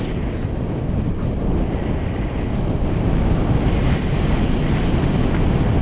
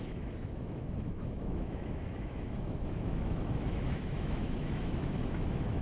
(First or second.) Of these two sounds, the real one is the first